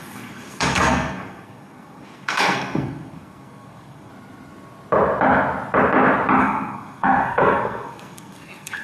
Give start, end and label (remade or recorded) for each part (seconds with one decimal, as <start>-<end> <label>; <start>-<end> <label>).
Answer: 0.0-4.1 remade; 4.1-6.4 recorded; 6.4-8.8 remade